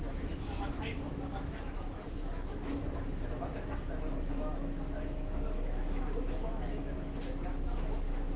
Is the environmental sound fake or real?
fake